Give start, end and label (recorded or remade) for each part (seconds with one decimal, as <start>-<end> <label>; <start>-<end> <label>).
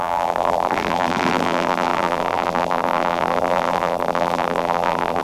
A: 0.0-5.2 remade